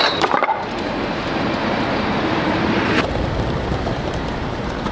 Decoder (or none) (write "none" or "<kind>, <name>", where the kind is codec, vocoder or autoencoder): vocoder, BigVGAN v2